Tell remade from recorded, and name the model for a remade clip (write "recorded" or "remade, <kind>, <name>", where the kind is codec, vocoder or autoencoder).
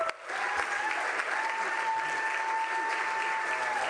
recorded